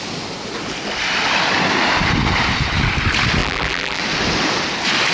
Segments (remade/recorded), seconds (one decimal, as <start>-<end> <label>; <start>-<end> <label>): 0.0-3.4 recorded; 3.4-4.0 remade; 4.0-5.1 recorded